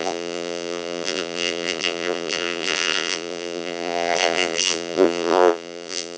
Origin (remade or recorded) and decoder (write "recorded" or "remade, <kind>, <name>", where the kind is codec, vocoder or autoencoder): remade, vocoder, BigVGAN v2